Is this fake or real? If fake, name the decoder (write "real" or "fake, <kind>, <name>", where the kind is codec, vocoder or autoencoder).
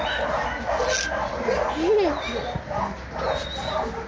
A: real